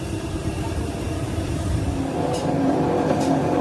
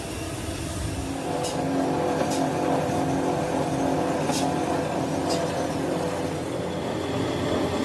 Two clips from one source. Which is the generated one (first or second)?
first